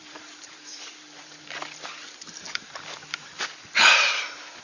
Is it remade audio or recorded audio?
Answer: remade